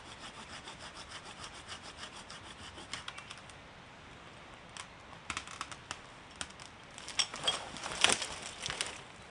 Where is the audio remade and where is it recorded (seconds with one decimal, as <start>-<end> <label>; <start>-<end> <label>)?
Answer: 0.0-9.3 recorded